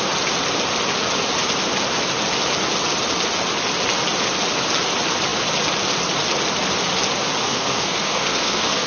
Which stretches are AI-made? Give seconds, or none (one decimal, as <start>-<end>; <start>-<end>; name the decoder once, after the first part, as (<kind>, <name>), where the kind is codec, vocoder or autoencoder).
7.4-8.9 (codec, SNAC)